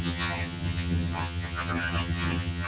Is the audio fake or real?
fake